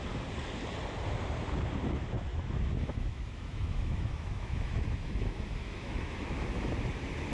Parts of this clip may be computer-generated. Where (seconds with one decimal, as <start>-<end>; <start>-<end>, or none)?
2.3-6.7